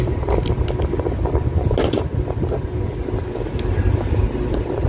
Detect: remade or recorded recorded